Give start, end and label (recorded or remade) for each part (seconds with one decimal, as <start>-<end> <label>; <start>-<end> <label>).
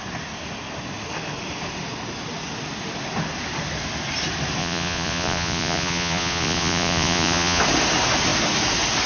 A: 0.0-4.6 recorded; 4.6-7.6 remade; 7.6-9.1 recorded